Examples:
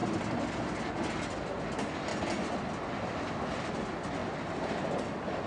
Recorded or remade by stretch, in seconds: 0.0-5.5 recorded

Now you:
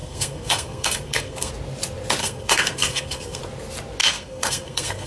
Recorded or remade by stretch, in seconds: 0.0-1.5 remade; 1.5-2.2 recorded; 2.2-3.4 remade; 3.4-4.0 recorded; 4.0-5.1 remade

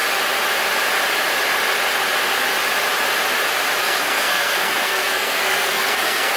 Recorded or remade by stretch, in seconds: 0.0-3.8 recorded; 3.8-6.4 remade

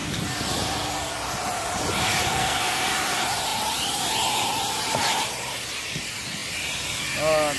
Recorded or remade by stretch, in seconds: 0.0-2.3 recorded; 2.3-2.8 remade; 2.8-7.6 recorded

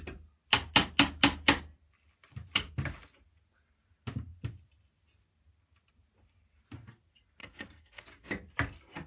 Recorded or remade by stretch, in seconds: 0.0-7.4 recorded; 7.4-8.0 remade; 8.0-9.1 recorded

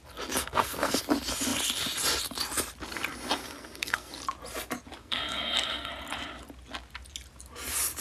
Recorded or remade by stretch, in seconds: 0.0-0.4 recorded; 0.4-1.0 remade; 1.0-3.4 recorded; 3.4-4.1 remade; 4.1-5.0 recorded; 5.0-5.9 remade; 5.9-8.0 recorded